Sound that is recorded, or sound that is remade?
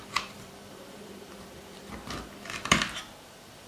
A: remade